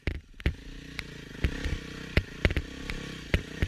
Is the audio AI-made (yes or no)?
no